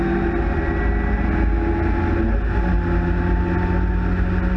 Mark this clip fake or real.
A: real